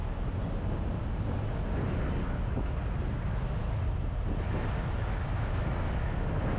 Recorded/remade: recorded